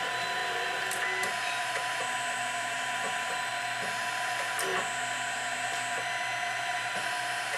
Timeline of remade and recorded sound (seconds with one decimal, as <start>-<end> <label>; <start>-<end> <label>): 0.0-3.5 remade; 3.5-4.0 recorded; 4.0-4.7 remade; 4.7-6.5 recorded; 6.5-7.6 remade

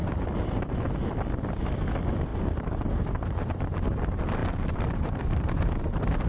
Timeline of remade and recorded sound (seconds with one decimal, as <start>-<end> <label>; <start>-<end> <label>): 0.0-2.3 recorded; 2.3-4.0 remade; 4.0-4.4 recorded; 4.4-6.3 remade

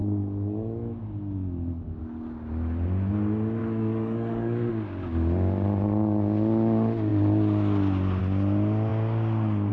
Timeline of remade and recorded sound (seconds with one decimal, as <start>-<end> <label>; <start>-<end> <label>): 0.0-2.0 remade; 2.0-3.6 recorded; 3.6-4.7 remade; 4.7-9.7 recorded

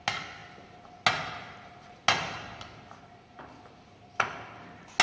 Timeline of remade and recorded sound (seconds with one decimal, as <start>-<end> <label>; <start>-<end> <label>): 0.0-5.0 recorded